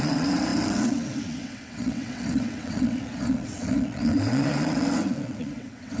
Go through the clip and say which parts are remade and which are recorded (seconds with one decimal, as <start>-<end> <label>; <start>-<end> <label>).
0.0-6.0 remade